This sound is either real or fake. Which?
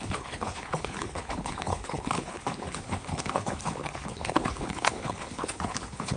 fake